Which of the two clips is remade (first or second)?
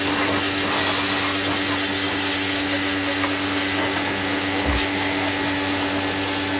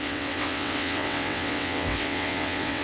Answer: second